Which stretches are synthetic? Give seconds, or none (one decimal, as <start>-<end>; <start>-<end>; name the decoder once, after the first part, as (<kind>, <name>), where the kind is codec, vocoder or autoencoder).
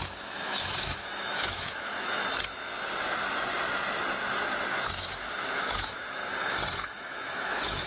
0.0-2.2 (autoencoder, DAC-VAE); 4.7-6.2; 6.8-7.9